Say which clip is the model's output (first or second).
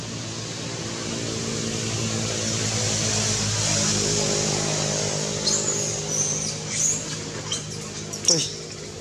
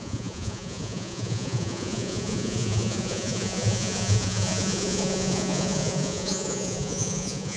second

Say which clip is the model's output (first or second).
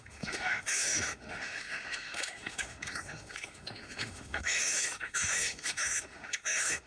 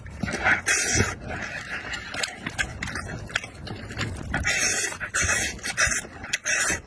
first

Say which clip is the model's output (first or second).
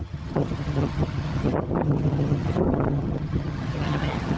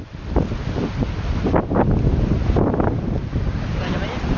first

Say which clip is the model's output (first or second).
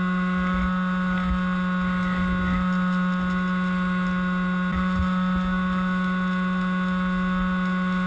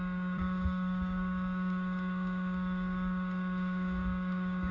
second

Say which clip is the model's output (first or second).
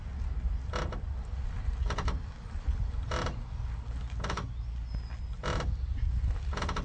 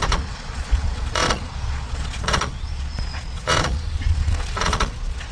second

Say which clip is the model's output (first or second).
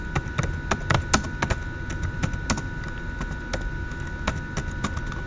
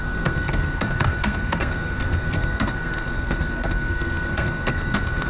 second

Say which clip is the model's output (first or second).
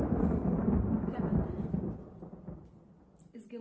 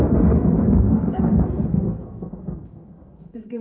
second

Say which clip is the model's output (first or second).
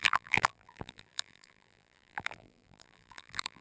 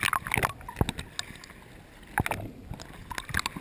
first